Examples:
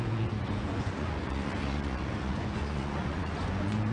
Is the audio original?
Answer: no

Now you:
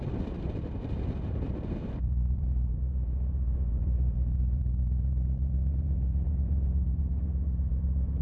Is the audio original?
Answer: no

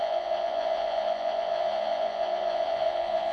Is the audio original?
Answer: no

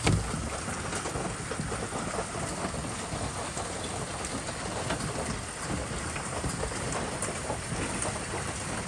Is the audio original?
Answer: yes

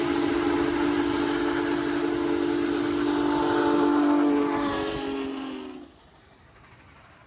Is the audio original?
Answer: yes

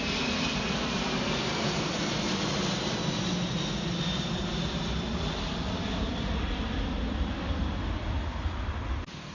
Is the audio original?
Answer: yes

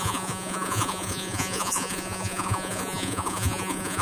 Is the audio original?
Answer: no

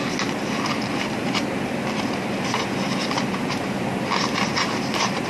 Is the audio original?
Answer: yes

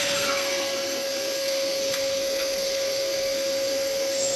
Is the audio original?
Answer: no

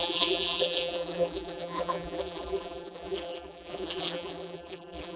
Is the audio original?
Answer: no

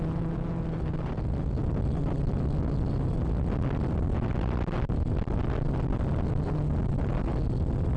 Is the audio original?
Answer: yes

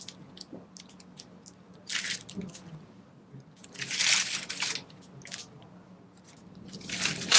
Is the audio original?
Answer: yes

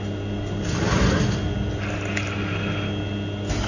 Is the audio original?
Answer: yes